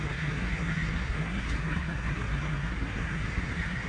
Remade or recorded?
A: remade